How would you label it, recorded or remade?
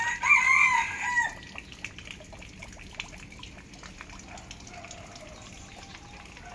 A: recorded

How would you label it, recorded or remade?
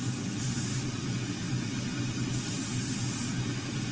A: recorded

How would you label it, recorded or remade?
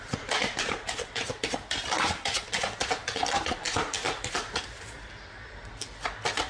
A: recorded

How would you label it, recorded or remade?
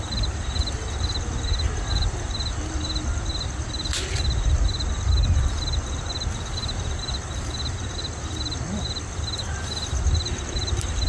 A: recorded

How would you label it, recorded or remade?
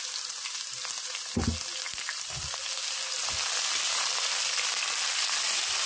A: recorded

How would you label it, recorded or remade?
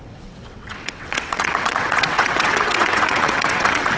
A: remade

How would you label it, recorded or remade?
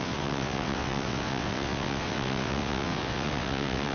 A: remade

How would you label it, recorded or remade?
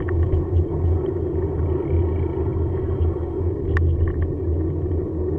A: recorded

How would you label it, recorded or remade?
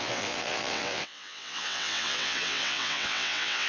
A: remade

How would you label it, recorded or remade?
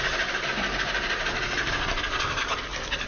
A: recorded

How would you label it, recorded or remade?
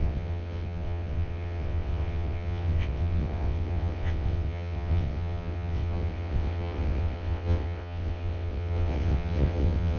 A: remade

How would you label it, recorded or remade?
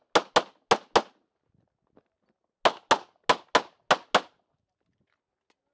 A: recorded